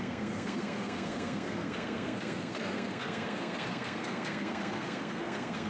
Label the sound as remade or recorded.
remade